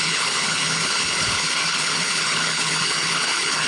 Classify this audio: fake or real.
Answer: fake